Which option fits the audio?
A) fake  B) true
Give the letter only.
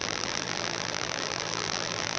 A